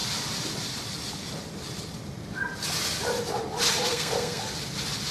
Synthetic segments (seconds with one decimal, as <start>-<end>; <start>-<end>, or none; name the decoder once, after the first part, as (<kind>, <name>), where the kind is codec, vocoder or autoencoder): 3.9-4.4 (codec, SNAC)